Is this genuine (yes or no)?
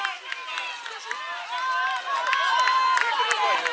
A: yes